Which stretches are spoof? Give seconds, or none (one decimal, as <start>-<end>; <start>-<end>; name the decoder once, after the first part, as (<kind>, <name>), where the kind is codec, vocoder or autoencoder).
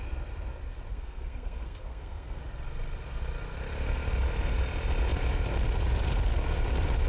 0.9-2.4 (codec, SNAC)